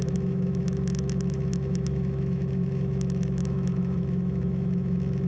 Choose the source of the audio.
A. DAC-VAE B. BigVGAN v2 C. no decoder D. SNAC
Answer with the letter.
A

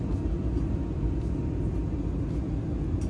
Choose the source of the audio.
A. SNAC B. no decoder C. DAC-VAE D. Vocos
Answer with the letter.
B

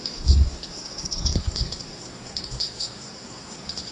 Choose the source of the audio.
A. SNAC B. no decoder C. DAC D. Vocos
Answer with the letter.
A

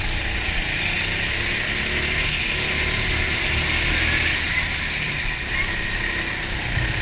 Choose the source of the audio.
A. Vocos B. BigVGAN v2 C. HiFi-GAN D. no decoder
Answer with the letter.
D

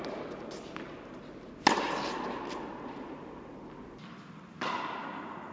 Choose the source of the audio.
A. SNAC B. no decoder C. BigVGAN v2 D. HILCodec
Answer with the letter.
B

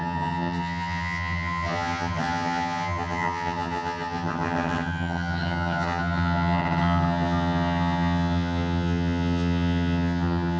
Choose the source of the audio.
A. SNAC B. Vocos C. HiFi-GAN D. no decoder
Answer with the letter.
C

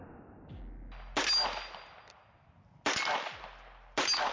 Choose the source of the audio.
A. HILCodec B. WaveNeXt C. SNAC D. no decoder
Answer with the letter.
D